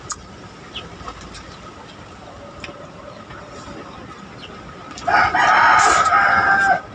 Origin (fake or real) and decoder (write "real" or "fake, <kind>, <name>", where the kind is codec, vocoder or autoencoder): real